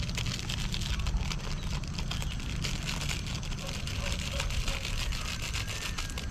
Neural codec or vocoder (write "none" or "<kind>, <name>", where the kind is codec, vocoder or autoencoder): none